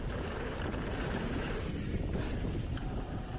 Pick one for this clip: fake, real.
real